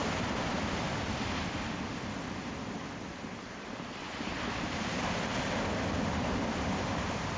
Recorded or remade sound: recorded